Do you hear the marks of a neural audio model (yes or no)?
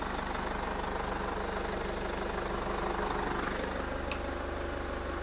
no